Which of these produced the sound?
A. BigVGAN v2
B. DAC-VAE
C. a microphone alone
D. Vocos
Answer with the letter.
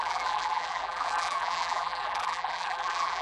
A